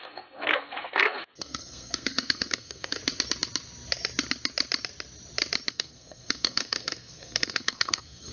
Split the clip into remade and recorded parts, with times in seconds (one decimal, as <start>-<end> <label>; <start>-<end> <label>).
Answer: 0.0-3.0 remade; 3.0-5.7 recorded; 5.7-8.3 remade